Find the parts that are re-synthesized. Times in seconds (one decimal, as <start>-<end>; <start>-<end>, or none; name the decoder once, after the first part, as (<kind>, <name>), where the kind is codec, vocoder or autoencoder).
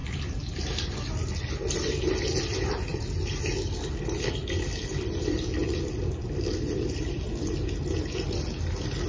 none